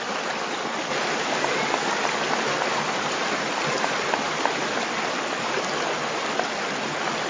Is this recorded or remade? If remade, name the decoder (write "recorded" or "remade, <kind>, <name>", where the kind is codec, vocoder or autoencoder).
recorded